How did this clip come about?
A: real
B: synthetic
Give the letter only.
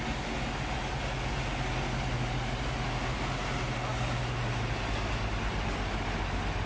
A